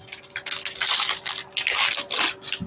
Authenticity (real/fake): real